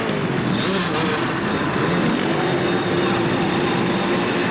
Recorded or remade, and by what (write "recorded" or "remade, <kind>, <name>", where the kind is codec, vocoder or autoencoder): recorded